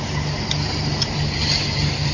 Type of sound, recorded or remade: recorded